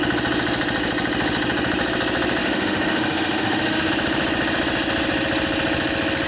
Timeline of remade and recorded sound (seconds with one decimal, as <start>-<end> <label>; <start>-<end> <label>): 0.0-2.4 recorded; 2.4-3.9 remade; 3.9-6.3 recorded